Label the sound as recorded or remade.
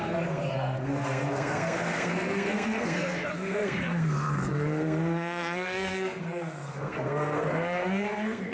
remade